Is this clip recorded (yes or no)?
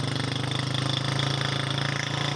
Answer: yes